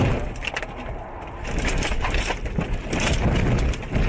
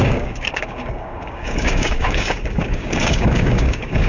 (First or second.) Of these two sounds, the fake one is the second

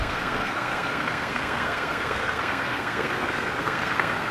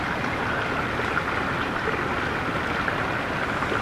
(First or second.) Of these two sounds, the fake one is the first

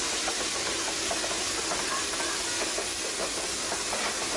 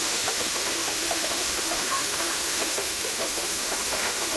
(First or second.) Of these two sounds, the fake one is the second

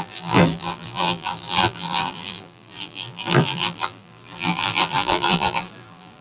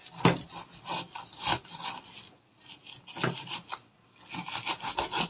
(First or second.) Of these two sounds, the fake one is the first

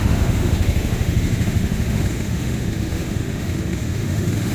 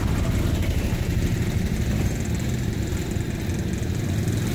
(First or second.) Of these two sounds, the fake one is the first